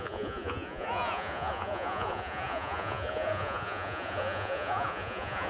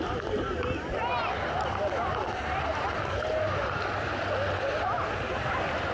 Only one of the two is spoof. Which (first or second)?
first